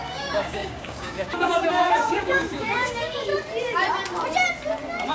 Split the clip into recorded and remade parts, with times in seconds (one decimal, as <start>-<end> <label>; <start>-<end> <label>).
0.0-3.3 remade; 3.3-5.1 recorded